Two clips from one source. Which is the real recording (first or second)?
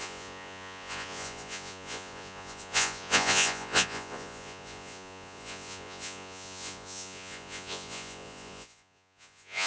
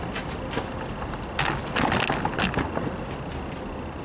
second